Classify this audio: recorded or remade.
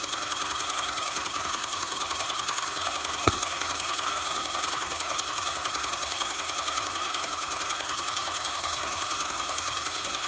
remade